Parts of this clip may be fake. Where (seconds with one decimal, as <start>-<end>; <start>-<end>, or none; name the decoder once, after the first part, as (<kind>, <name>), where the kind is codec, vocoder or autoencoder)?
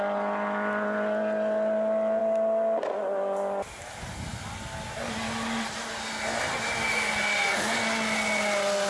none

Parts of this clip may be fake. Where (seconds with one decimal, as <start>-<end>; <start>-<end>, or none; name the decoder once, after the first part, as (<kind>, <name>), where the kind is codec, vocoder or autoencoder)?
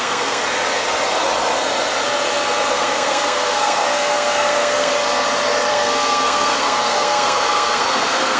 0.0-0.4 (codec, SNAC); 2.7-4.9; 5.7-8.4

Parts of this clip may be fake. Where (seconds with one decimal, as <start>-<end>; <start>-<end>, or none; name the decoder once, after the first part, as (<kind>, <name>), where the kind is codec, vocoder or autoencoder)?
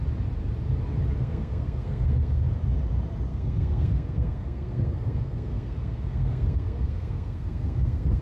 1.2-2.4 (codec, SNAC); 3.3-8.2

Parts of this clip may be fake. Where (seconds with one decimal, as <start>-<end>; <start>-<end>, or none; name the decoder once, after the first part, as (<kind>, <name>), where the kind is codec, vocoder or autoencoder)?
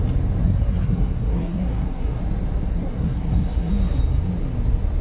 0.4-2.2 (codec, SNAC); 2.7-3.7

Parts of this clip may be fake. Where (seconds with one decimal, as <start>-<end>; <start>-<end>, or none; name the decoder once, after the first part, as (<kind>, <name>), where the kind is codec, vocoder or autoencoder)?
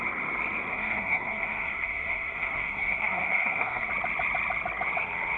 0.7-3.9 (codec, SNAC)